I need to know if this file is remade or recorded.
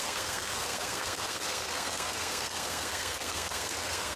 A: remade